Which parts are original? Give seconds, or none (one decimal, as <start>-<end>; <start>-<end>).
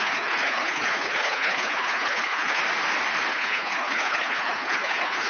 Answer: 2.6-3.3